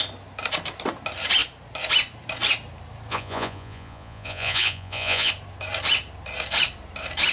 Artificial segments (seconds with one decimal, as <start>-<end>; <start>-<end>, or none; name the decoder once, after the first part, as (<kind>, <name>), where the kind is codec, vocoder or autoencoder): 3.1-5.3 (vocoder, Vocos)